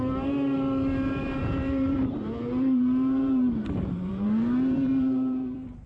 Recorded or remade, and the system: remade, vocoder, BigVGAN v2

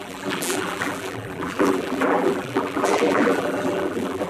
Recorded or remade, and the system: remade, vocoder, BigVGAN v2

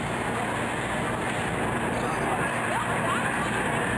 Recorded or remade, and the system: recorded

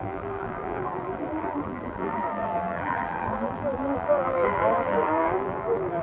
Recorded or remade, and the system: remade, vocoder, BigVGAN v2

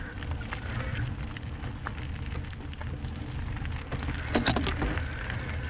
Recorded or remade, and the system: recorded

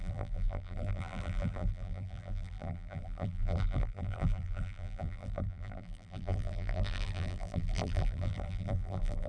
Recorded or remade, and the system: remade, vocoder, BigVGAN v2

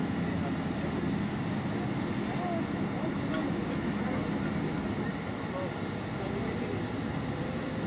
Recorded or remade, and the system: recorded